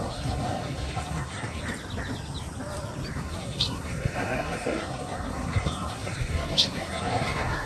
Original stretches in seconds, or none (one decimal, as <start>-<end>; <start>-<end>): 1.6-3.1